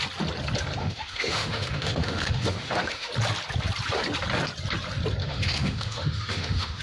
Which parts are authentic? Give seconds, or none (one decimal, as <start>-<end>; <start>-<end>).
0.0-0.8; 3.1-5.2